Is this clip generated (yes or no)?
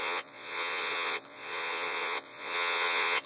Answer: yes